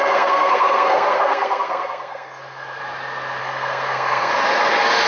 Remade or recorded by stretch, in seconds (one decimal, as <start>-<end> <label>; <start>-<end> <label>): 0.0-2.8 remade; 2.8-3.4 recorded; 3.4-4.3 remade; 4.3-5.1 recorded